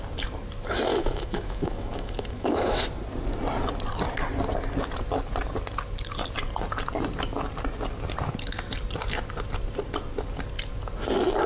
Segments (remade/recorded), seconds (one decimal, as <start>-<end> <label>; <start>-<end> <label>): 0.0-0.9 recorded; 0.9-2.8 remade; 2.8-11.5 recorded

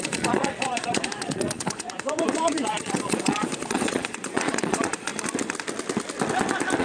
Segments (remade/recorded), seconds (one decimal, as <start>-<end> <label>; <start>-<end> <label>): 0.0-5.1 remade; 5.1-6.8 recorded

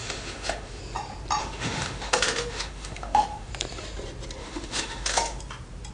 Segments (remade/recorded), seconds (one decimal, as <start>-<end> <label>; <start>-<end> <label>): 0.0-0.8 remade; 0.8-1.4 recorded; 1.4-3.5 remade; 3.5-4.4 recorded; 4.4-5.4 remade; 5.4-5.9 recorded

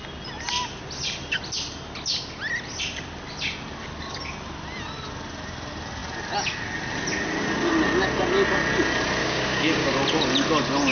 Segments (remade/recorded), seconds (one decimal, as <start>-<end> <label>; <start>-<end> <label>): 0.0-9.2 recorded; 9.2-9.9 remade; 9.9-10.9 recorded

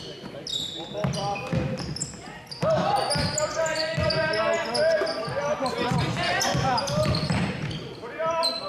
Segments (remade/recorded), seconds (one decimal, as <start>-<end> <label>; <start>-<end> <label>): 0.0-8.7 recorded

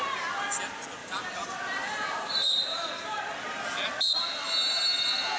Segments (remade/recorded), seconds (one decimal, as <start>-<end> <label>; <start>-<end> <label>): 0.0-1.0 recorded; 1.0-4.2 remade; 4.2-5.4 recorded

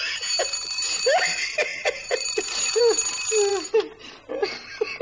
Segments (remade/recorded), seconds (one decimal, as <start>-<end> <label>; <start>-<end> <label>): 0.0-1.7 recorded; 1.7-2.8 remade; 2.8-5.0 recorded

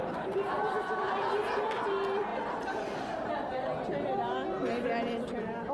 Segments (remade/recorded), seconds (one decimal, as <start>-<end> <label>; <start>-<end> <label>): 0.0-1.1 remade; 1.1-5.7 recorded